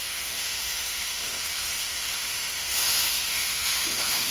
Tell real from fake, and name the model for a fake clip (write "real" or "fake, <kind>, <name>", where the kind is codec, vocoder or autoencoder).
fake, autoencoder, DAC-VAE